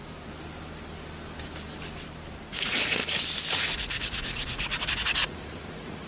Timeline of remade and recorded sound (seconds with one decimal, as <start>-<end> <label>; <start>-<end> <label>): 0.0-2.5 recorded; 2.5-3.0 remade; 3.0-3.5 recorded; 3.5-6.1 remade